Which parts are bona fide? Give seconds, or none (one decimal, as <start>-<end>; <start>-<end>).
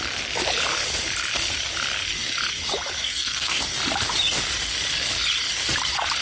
0.0-3.0; 3.6-6.2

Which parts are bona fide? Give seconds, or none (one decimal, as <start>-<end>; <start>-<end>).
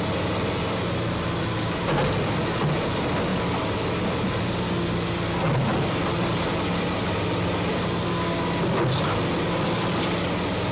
0.0-10.7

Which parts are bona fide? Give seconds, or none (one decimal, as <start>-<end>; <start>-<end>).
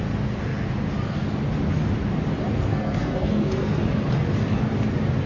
0.0-2.7; 3.7-5.3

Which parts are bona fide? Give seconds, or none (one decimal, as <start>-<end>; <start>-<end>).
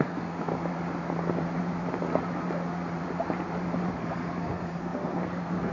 0.5-3.9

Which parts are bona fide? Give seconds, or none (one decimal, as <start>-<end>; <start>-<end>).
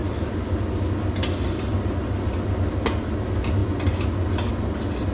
0.0-5.1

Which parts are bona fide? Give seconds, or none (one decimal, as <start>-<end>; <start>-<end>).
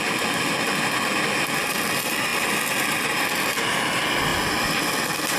0.0-5.4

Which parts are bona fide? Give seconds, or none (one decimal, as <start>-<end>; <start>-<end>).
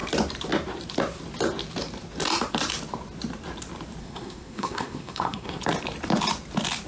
0.0-4.0; 5.6-6.9